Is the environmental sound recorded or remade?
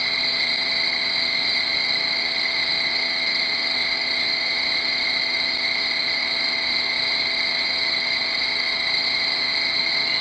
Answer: recorded